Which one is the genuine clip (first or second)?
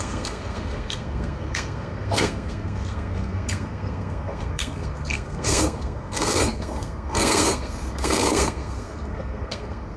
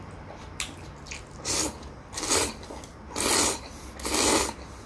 second